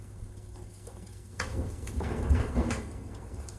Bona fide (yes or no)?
no